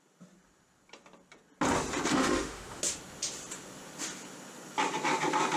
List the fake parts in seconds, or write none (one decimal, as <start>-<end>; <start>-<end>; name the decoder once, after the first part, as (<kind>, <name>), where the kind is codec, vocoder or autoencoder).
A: 2.1-2.8 (autoencoder, DAC-VAE)